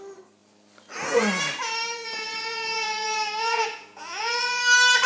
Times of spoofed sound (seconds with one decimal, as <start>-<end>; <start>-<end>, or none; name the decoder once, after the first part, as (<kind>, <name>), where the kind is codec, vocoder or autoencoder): 1.9-4.6 (vocoder, Vocos)